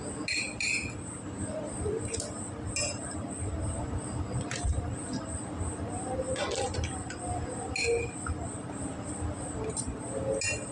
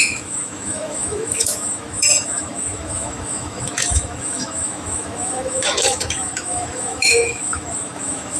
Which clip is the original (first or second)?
first